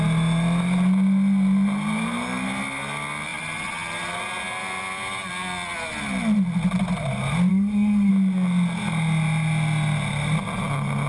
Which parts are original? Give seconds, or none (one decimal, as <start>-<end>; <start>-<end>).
0.0-7.5; 8.1-11.1